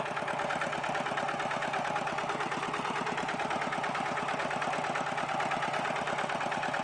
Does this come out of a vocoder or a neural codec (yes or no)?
no